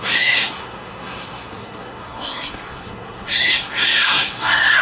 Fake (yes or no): yes